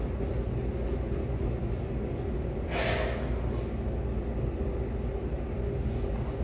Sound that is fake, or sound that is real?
real